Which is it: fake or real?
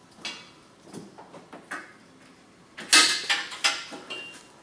real